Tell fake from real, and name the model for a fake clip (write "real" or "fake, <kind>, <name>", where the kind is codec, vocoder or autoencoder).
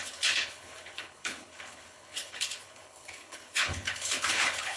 fake, codec, HILCodec